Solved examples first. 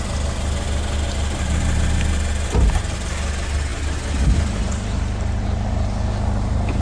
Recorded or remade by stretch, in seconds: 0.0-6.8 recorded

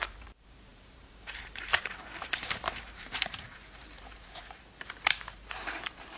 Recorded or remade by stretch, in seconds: 0.0-6.2 remade

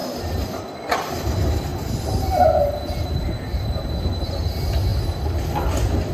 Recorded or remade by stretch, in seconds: 0.0-6.1 recorded

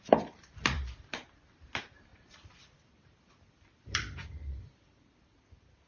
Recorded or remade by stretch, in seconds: 0.0-5.9 remade

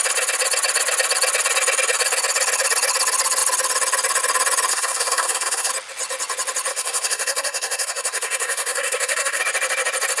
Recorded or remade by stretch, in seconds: 0.0-4.7 recorded; 4.7-5.7 remade; 5.7-6.7 recorded; 6.7-9.4 remade; 9.4-10.2 recorded

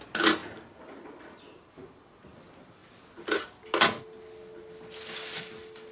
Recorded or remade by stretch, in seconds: 0.0-0.4 recorded; 0.4-1.7 remade; 1.7-5.9 recorded

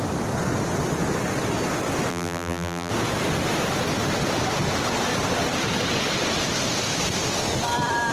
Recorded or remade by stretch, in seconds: 0.0-2.1 recorded; 2.1-2.9 remade; 2.9-8.1 recorded